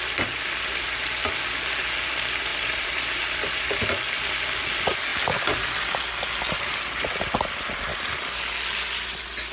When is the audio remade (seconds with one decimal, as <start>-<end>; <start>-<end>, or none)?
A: 2.5-3.2